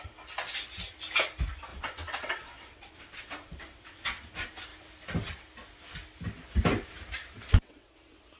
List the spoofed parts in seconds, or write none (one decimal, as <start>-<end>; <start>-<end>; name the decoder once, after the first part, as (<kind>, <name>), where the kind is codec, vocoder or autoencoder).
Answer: 1.7-4.3 (vocoder, WaveNeXt); 7.2-7.9